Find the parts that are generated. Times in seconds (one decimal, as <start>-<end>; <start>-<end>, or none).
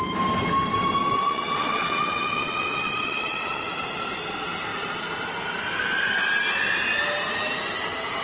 1.0-3.6